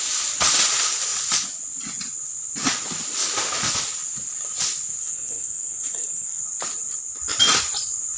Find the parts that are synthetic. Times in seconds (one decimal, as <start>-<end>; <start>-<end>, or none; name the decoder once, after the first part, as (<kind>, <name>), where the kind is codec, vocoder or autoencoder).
5.0-6.4 (codec, SNAC)